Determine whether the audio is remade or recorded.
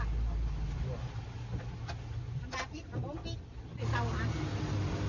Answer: recorded